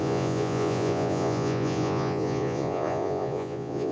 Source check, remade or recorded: remade